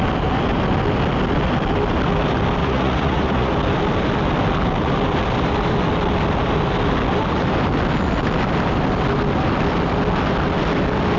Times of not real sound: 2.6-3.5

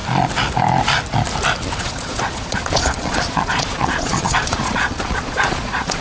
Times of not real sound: 1.8-6.0

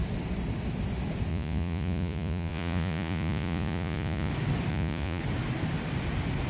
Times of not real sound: 1.3-4.3; 4.7-5.2

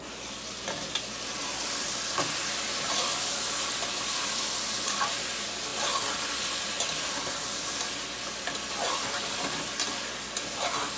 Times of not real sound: none

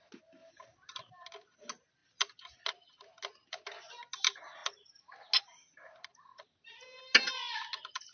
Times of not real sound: none